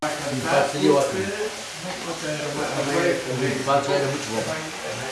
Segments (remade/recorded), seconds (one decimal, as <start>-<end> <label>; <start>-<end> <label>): 0.0-5.1 recorded